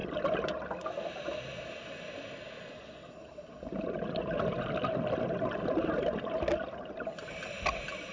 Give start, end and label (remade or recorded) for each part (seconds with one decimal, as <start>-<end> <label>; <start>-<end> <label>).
0.0-8.1 recorded